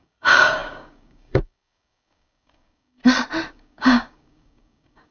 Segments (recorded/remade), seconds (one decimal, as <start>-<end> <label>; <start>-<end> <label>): 0.0-3.0 remade; 3.0-3.5 recorded; 3.5-5.1 remade